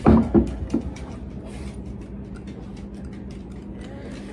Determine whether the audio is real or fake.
real